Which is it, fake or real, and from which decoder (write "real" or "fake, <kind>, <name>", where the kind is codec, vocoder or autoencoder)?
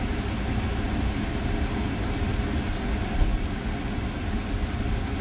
real